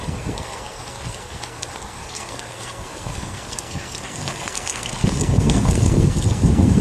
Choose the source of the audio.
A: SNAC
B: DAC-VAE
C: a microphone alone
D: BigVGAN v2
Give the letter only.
A